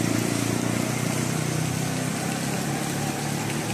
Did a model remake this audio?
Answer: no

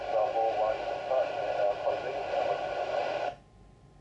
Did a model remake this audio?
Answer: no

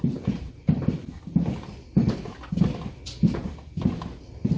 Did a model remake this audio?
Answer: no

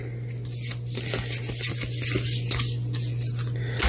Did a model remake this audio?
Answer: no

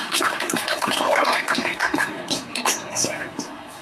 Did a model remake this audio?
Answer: yes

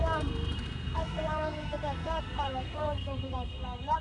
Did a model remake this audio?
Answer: yes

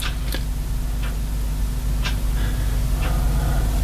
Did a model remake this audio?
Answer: no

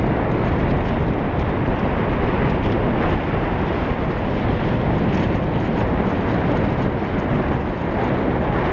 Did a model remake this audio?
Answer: no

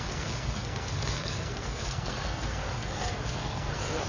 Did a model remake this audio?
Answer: yes